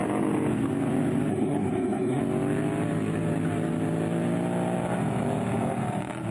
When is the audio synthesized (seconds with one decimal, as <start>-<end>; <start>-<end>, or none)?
1.3-2.2

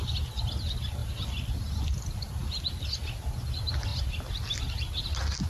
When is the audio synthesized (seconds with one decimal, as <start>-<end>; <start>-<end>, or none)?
none

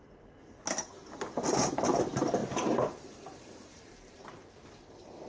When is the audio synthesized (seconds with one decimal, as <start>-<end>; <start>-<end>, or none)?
2.4-4.2

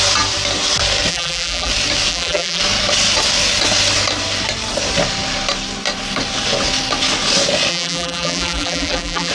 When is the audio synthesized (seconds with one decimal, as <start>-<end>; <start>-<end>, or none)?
1.1-1.7; 2.1-2.6; 7.7-9.3

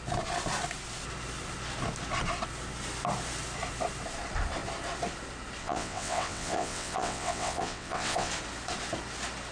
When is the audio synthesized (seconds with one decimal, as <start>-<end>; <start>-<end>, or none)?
5.6-8.3